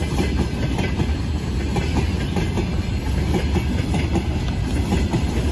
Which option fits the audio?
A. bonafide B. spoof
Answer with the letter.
A